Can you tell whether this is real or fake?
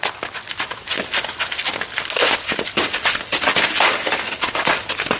real